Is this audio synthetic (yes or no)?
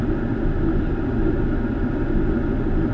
no